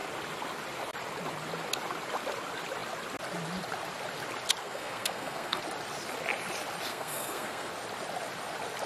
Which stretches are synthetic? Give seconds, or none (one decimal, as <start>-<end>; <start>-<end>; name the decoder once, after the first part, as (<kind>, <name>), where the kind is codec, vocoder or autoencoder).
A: 4.6-5.6 (codec, SNAC); 6.9-7.7